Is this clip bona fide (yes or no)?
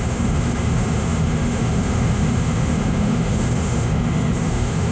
no